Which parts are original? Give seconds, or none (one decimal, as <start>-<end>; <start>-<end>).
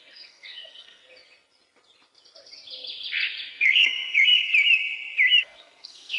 1.0-3.5; 4.5-5.4